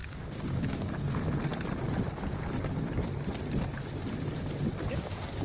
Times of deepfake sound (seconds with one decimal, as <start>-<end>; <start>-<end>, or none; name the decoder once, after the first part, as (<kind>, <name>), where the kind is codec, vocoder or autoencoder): 0.0-0.9 (codec, DAC)